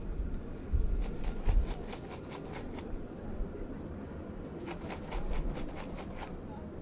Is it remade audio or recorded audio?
recorded